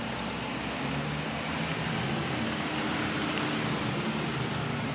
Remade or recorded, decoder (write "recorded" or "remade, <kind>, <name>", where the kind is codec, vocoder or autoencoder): recorded